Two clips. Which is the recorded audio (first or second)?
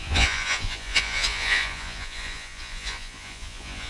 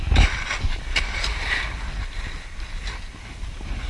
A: second